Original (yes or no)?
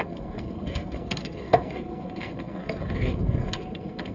no